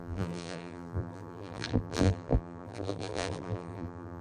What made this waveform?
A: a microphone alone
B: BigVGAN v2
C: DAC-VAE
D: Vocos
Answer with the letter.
B